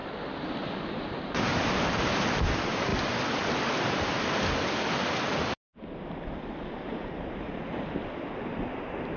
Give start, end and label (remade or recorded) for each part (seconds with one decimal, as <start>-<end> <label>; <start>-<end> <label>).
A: 0.0-0.5 recorded; 0.5-2.9 remade; 2.9-6.7 recorded; 6.7-9.2 remade